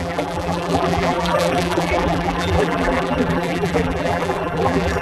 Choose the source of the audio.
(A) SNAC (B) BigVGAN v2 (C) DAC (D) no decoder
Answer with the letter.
B